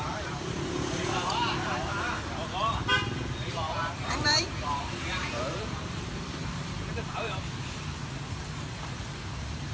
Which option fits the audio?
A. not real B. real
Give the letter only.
A